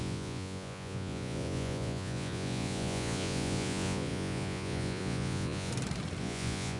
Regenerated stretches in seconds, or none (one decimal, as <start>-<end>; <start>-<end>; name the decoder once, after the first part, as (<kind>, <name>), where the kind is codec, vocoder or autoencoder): 0.0-5.7 (vocoder, Vocos); 6.2-6.8